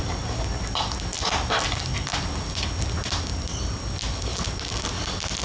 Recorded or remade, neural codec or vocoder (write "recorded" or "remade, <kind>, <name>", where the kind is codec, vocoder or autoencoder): recorded